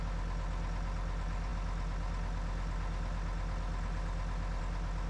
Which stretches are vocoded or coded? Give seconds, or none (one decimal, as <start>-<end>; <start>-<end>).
none